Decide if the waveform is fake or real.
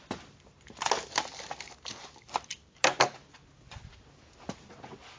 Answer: real